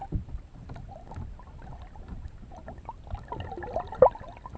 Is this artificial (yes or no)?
no